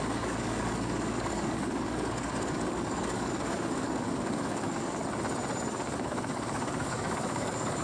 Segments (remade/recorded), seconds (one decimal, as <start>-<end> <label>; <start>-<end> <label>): 0.0-5.0 remade; 5.0-5.7 recorded; 5.7-7.8 remade